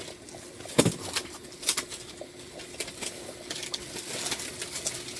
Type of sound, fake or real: real